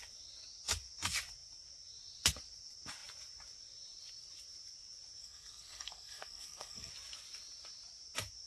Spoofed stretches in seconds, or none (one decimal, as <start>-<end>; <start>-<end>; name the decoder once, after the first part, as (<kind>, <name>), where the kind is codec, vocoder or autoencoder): 5.2-6.9 (codec, SNAC)